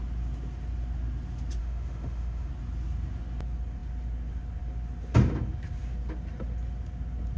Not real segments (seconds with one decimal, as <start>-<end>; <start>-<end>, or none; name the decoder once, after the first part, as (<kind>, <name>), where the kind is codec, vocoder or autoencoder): 1.6-2.5 (autoencoder, DAC-VAE)